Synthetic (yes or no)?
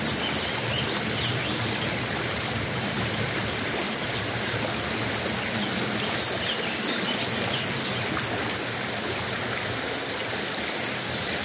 no